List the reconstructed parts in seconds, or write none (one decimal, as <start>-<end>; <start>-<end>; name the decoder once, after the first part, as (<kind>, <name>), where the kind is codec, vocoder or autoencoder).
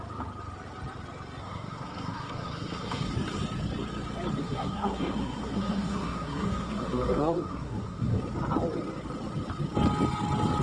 1.4-3.1 (codec, SNAC); 4.4-8.2